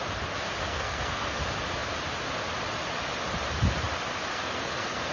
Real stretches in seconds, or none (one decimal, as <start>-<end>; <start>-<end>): 0.0-0.6; 1.4-4.3

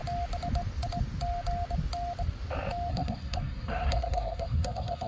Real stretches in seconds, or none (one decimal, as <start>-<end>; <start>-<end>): 0.0-2.9